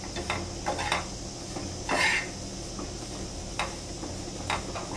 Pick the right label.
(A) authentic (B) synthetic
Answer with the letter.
A